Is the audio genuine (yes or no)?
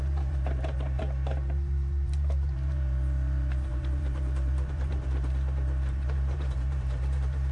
no